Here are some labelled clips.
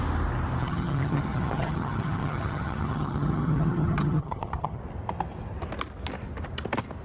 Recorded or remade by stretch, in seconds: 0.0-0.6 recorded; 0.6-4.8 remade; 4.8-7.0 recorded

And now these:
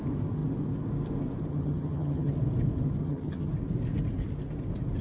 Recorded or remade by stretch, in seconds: 0.0-1.5 recorded; 1.5-2.3 remade; 2.3-3.0 recorded; 3.0-3.5 remade; 3.5-5.0 recorded

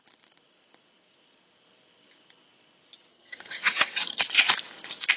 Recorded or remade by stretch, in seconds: 0.0-3.1 recorded; 3.1-4.2 remade; 4.2-5.2 recorded

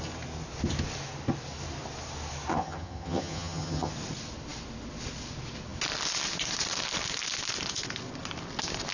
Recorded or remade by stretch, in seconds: 0.0-2.5 recorded; 2.5-3.9 remade; 3.9-8.9 recorded

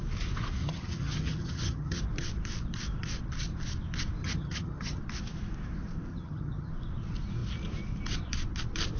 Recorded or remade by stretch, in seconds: 0.0-0.6 recorded; 0.6-2.0 remade; 2.0-4.2 recorded; 4.2-5.0 remade; 5.0-6.1 recorded; 6.1-6.7 remade; 6.7-9.0 recorded

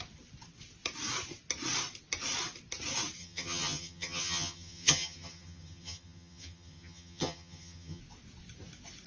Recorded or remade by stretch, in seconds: 0.0-3.2 recorded; 3.2-8.0 remade; 8.0-9.1 recorded

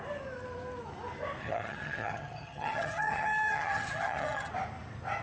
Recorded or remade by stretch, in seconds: 0.0-1.4 recorded; 1.4-4.5 remade; 4.5-5.2 recorded

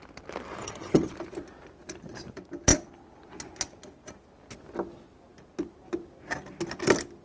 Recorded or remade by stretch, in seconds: 0.0-0.6 recorded; 0.6-1.1 remade; 1.1-7.2 recorded